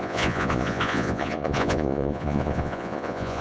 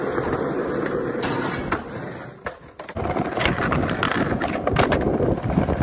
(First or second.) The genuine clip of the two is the second